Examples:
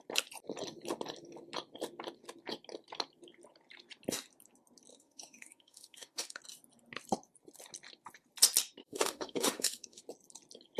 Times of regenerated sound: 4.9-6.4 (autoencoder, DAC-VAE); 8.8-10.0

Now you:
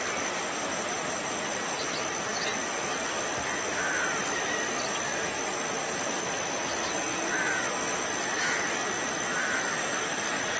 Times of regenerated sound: none

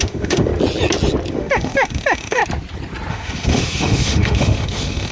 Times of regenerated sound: 0.0-0.5 (autoencoder, DAC-VAE); 1.3-2.4; 3.1-5.1

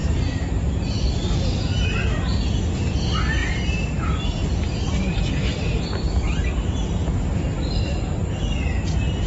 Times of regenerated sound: 0.0-1.6 (vocoder, BigVGAN v2); 3.4-6.1; 7.0-7.9

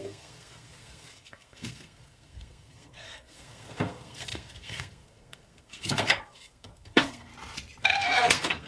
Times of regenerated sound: 0.0-7.3 (codec, SNAC); 7.8-8.7